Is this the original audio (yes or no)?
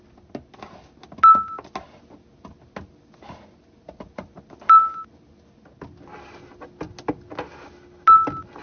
yes